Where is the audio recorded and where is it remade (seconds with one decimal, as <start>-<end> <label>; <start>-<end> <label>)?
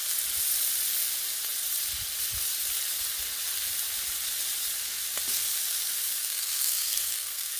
0.0-6.2 recorded; 6.2-7.6 remade